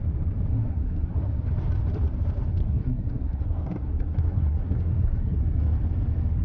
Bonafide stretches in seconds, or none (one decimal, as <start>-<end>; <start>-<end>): 0.0-0.5; 1.4-2.6; 5.4-6.4